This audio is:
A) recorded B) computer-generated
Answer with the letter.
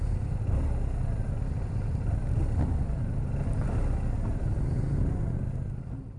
A